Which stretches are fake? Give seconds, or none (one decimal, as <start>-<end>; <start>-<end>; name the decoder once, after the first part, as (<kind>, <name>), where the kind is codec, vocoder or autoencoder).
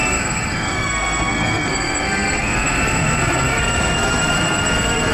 0.0-5.1 (codec, SNAC)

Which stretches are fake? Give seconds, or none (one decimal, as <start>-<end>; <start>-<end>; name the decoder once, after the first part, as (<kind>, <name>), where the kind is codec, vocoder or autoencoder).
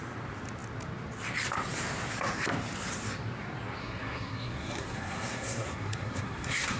3.8-6.8 (codec, SNAC)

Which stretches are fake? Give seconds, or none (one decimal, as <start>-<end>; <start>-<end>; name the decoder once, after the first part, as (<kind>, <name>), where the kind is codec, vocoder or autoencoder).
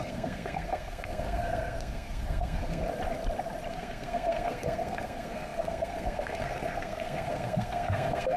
0.0-2.8 (codec, SNAC); 3.7-8.4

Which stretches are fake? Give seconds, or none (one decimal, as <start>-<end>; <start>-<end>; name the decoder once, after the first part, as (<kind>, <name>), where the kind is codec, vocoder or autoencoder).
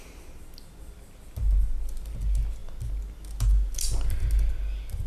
none